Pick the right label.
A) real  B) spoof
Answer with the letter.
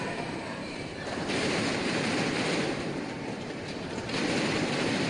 B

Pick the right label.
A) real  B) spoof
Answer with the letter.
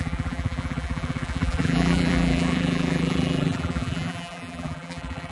B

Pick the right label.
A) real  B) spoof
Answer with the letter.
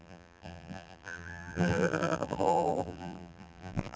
B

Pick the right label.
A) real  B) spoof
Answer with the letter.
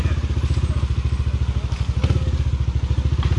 A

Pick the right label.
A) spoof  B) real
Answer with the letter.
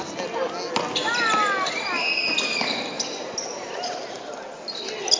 B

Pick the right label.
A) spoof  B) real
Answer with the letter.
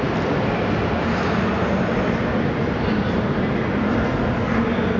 B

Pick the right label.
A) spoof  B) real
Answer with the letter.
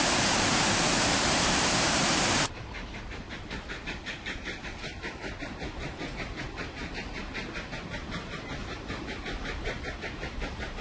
A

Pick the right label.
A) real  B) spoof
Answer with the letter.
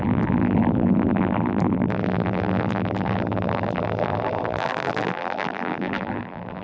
B